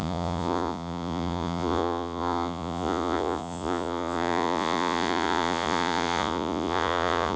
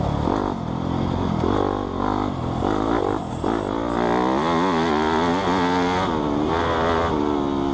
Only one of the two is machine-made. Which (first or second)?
first